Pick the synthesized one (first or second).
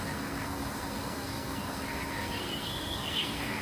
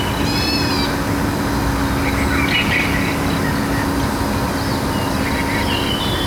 first